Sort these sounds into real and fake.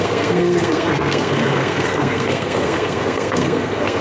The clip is fake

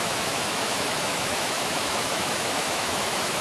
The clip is fake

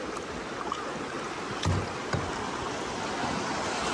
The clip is real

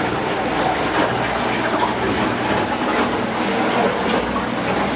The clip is real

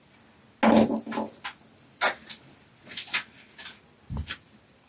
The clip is real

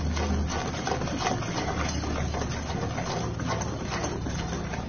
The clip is real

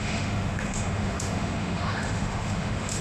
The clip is fake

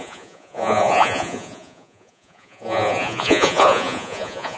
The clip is fake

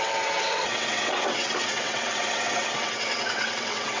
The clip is fake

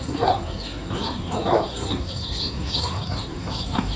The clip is fake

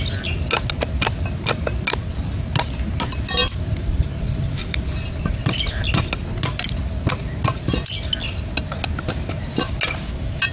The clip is real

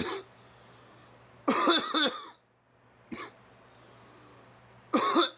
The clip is real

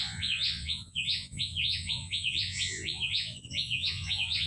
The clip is fake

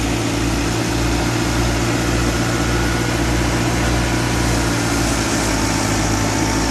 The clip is real